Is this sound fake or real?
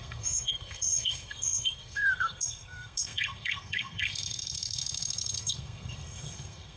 fake